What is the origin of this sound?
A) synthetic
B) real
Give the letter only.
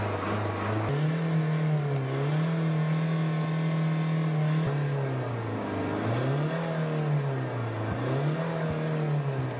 B